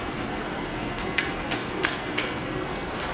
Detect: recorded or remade remade